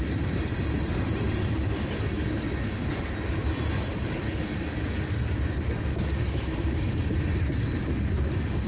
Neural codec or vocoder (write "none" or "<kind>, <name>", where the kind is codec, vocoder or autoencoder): none